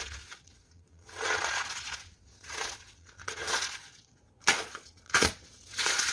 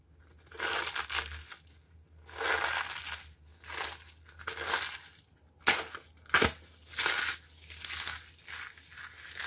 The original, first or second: second